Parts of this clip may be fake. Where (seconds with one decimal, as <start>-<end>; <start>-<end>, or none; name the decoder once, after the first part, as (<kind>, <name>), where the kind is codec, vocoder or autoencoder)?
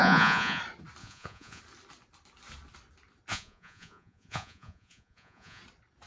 0.0-0.6 (vocoder, Vocos); 1.0-1.6; 3.3-5.6